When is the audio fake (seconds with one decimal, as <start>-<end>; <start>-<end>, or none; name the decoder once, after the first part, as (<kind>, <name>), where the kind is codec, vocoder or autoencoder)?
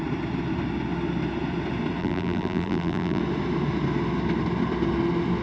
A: 2.0-3.2 (vocoder, BigVGAN v2)